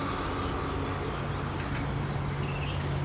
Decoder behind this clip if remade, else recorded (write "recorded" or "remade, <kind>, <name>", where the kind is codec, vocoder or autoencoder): recorded